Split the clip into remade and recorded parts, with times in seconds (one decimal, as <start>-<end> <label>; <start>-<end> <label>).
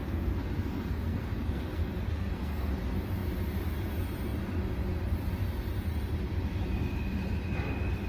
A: 0.0-2.7 remade; 2.7-8.1 recorded